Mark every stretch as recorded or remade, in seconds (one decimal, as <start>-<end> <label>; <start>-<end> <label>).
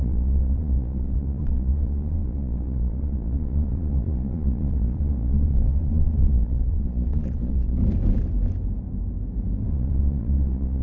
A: 0.0-7.8 remade; 7.8-9.7 recorded; 9.7-10.8 remade